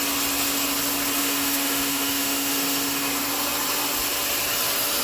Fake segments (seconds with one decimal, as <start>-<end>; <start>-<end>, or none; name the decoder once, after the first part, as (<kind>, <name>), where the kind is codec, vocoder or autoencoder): 1.2-3.1 (autoencoder, DAC-VAE)